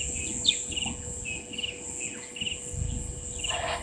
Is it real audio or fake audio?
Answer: real